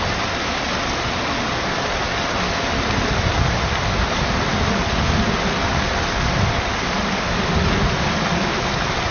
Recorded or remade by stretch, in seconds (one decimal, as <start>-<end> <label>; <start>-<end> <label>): 0.0-9.1 recorded